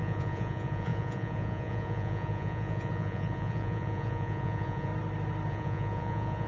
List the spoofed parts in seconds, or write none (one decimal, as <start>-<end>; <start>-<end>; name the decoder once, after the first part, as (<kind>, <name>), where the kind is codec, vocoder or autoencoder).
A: 0.0-4.9 (vocoder, Vocos); 5.5-6.5